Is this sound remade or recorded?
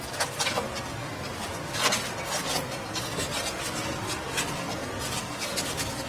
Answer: recorded